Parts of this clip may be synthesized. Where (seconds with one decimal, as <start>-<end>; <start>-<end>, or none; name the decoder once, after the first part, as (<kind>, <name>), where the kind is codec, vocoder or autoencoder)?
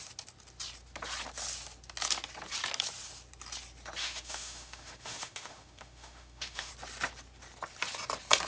4.0-6.7 (autoencoder, DAC-VAE)